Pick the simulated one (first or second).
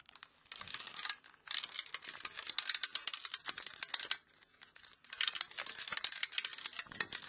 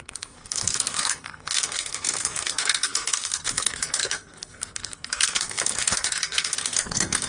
second